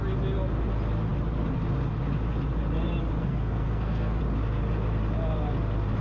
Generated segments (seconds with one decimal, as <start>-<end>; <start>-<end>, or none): 3.2-4.2